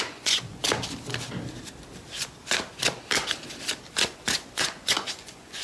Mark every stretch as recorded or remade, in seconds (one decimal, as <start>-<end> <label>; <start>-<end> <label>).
0.0-0.6 remade; 0.6-4.0 recorded; 4.0-5.6 remade